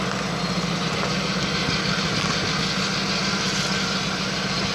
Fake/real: real